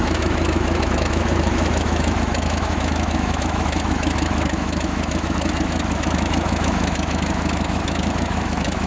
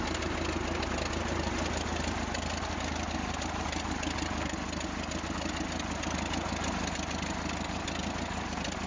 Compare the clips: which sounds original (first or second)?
second